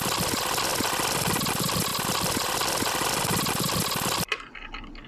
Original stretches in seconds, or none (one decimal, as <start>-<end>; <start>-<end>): 0.0-1.9; 3.4-5.1